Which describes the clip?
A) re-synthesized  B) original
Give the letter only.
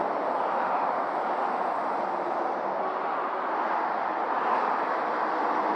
B